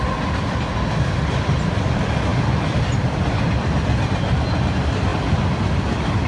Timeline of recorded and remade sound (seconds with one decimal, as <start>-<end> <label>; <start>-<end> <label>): 0.0-6.3 recorded